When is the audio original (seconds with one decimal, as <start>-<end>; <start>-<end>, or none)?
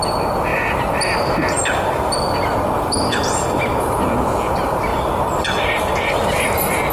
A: 0.0-6.9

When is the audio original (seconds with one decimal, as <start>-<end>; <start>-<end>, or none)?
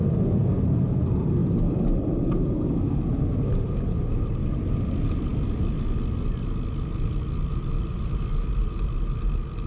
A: 0.0-9.7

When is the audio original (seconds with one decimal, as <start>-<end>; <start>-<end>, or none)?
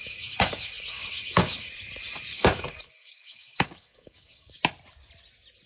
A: 1.7-2.3; 4.6-5.7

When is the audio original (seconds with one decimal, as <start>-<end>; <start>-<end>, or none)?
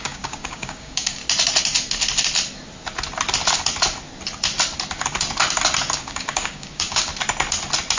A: 1.2-6.0; 7.1-8.0